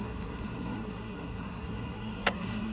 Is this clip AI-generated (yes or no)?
yes